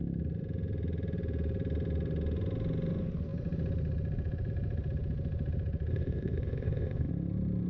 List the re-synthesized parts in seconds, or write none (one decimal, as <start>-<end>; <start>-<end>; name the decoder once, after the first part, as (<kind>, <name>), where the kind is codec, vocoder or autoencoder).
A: 5.9-7.1 (codec, ZipCodec)